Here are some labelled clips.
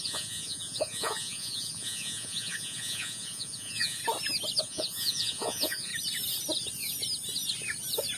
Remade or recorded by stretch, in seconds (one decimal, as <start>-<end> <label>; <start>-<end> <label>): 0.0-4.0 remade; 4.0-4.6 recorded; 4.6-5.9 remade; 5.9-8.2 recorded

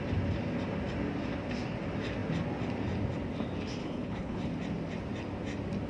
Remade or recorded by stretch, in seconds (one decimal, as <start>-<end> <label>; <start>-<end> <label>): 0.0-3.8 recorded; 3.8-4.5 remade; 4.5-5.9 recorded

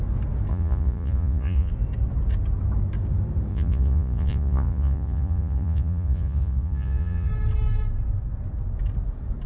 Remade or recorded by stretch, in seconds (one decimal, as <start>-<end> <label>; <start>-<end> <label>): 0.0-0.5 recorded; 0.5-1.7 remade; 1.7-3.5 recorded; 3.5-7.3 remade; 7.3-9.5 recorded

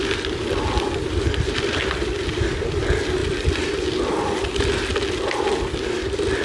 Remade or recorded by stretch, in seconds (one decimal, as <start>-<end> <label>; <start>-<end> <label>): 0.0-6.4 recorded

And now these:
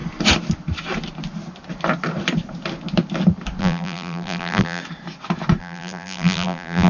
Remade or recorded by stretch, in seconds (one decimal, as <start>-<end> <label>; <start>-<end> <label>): 0.0-3.6 recorded; 3.6-4.8 remade; 4.8-5.6 recorded; 5.6-6.9 remade